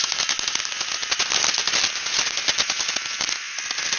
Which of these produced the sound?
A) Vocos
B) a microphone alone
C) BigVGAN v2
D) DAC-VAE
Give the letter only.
B